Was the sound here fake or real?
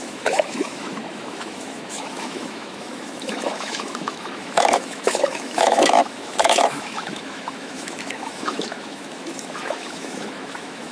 fake